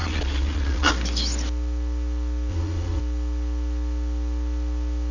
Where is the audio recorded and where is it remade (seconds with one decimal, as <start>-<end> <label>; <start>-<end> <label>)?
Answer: 0.0-0.9 remade; 0.9-2.5 recorded; 2.5-3.0 remade; 3.0-5.1 recorded